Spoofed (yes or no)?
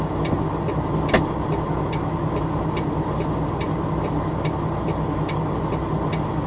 no